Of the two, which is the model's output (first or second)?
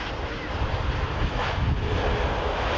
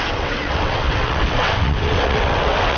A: second